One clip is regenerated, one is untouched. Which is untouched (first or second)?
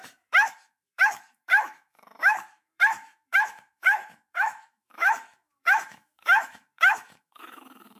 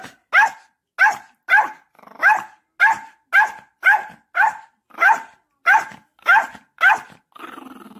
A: second